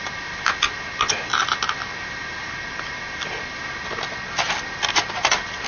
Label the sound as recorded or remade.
recorded